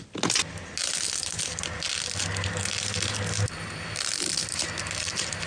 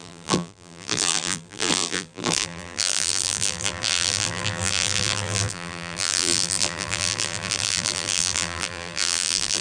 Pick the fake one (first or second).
second